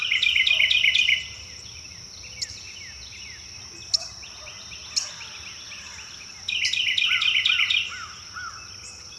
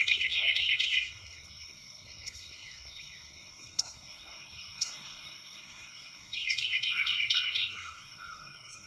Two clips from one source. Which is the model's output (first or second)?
second